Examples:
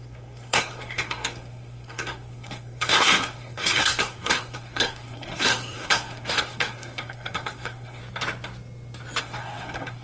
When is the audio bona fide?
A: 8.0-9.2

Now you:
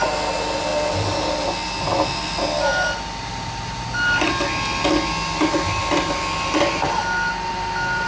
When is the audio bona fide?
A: 0.0-8.1